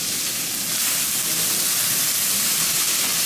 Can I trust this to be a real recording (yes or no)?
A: no